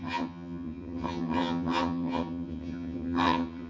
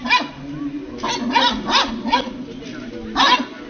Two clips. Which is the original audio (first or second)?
second